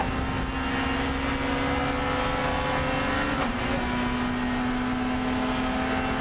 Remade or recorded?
recorded